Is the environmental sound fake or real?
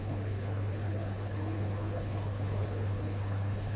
fake